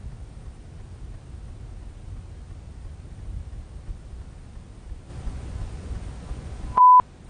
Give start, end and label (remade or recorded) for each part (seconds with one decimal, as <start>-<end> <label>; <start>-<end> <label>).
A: 0.0-5.1 recorded; 5.1-6.8 remade; 6.8-7.3 recorded

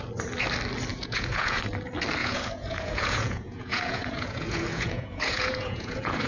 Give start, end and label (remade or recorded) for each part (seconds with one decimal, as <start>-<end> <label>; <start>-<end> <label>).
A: 0.0-0.9 recorded; 0.9-1.6 remade; 1.6-2.2 recorded; 2.2-6.3 remade